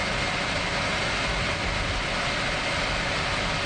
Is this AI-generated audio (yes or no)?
no